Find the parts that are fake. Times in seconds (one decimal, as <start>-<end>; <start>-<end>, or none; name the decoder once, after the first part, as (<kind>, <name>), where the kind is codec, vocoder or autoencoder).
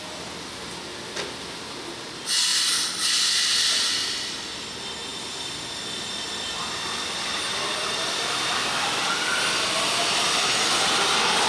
2.5-3.6 (vocoder, BigVGAN v2); 5.1-8.5